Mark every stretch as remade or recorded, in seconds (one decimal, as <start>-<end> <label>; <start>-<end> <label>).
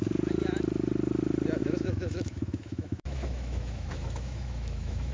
0.0-1.6 recorded; 1.6-5.1 remade